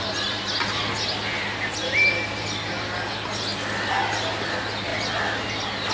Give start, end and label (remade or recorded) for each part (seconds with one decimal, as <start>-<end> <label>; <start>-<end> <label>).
0.0-5.9 recorded